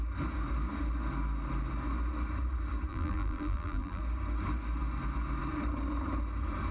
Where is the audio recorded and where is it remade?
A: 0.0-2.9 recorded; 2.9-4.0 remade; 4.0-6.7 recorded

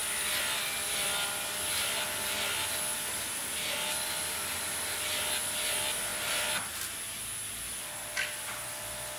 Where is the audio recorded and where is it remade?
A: 0.0-9.2 recorded

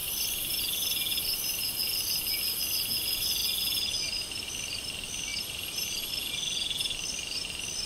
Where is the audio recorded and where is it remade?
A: 0.0-5.3 recorded; 5.3-6.3 remade; 6.3-7.9 recorded

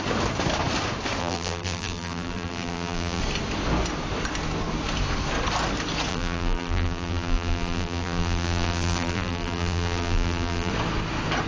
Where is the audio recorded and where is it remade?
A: 0.0-1.2 recorded; 1.2-3.2 remade; 3.2-6.1 recorded; 6.1-10.7 remade; 10.7-11.5 recorded

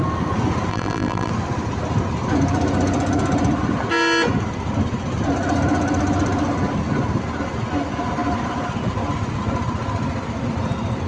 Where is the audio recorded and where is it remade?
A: 0.0-0.7 recorded; 0.7-1.3 remade; 1.3-11.1 recorded

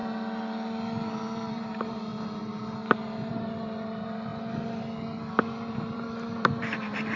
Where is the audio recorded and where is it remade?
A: 0.0-1.5 recorded; 1.5-2.1 remade; 2.1-3.3 recorded; 3.3-4.3 remade; 4.3-5.7 recorded; 5.7-7.2 remade

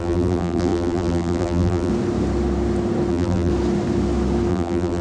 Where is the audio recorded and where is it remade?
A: 0.0-1.9 remade; 1.9-3.1 recorded; 3.1-3.5 remade; 3.5-4.5 recorded; 4.5-5.0 remade